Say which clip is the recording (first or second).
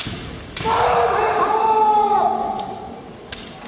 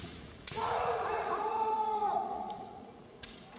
first